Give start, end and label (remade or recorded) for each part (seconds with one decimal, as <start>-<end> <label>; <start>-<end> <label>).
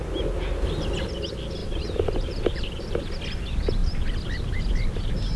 0.0-1.6 recorded; 1.6-3.2 remade; 3.2-5.4 recorded